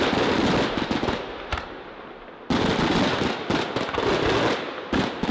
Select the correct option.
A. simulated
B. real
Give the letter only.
B